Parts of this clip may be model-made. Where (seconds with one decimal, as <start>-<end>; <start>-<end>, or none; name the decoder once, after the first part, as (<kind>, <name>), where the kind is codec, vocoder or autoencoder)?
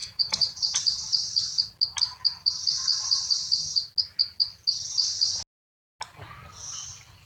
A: 0.0-0.7 (vocoder, Vocos)